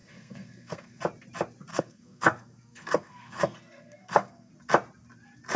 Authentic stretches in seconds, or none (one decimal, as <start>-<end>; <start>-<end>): 1.0-1.7; 4.5-5.6

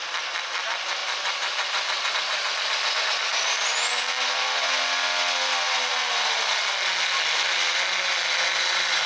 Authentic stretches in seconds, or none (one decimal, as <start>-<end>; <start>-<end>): 0.0-9.1

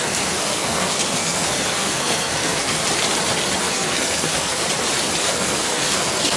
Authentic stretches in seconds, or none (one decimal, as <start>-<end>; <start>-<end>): 2.8-3.6; 4.6-5.2

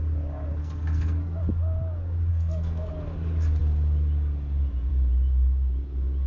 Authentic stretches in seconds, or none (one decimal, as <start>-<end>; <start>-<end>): 0.0-0.6; 1.4-2.3; 2.9-6.3

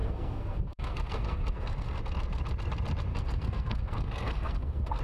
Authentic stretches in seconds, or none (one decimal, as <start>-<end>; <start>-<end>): 2.0-3.1

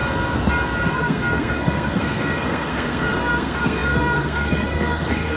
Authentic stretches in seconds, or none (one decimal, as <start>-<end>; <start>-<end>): 0.0-0.9